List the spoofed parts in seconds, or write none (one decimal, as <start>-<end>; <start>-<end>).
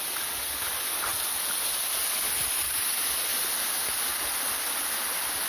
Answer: none